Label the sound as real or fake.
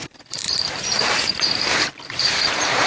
fake